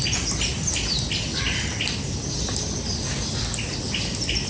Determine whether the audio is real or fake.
real